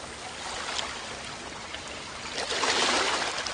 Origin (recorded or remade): recorded